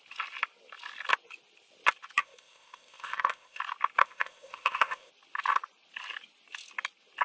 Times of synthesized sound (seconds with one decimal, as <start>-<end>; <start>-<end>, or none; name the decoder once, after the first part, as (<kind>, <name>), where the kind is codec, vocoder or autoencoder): 2.2-3.6 (codec, ZipCodec); 4.0-5.1